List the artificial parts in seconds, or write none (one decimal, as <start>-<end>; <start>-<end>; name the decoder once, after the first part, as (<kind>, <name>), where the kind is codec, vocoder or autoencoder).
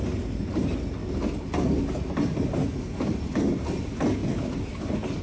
none